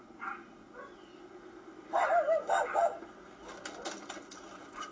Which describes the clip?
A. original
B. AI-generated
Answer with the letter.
A